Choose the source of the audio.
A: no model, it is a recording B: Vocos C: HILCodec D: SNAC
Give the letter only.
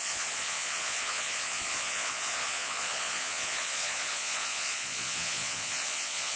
B